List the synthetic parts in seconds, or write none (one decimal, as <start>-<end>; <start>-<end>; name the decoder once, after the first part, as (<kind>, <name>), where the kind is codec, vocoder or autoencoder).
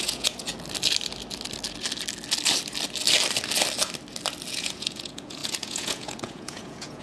0.0-0.5 (vocoder, Vocos); 4.5-7.0